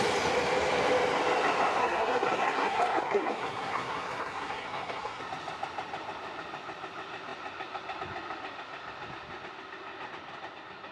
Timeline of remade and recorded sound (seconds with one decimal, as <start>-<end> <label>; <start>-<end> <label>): 0.0-1.8 recorded; 1.8-5.2 remade; 5.2-10.9 recorded